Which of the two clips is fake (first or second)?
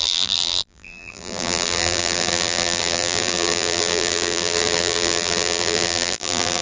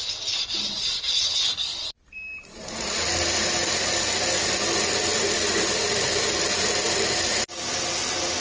first